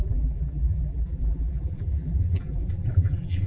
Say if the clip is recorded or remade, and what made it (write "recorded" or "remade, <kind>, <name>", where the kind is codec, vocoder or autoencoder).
remade, vocoder, BigVGAN v2